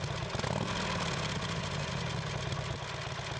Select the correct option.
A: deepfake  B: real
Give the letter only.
B